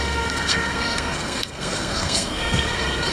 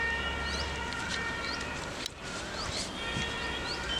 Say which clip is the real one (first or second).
second